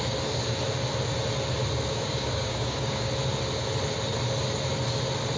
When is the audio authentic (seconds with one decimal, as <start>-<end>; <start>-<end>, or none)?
0.0-1.9; 3.1-5.4